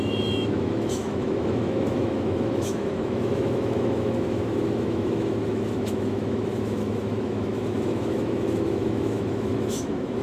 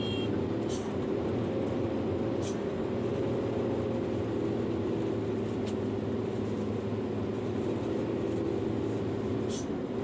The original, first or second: second